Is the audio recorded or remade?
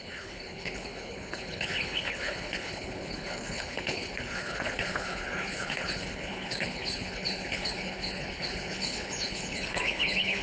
remade